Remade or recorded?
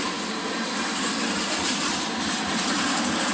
recorded